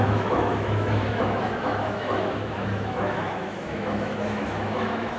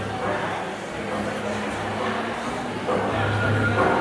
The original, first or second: second